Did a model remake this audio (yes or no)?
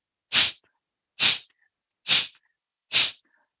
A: no